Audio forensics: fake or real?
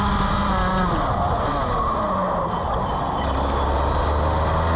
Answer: real